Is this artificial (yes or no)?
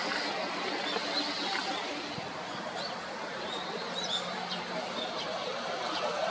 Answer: no